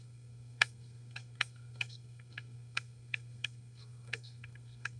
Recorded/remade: remade